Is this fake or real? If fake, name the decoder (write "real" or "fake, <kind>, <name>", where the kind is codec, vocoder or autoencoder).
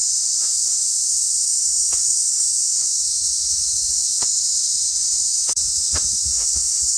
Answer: fake, autoencoder, DAC-VAE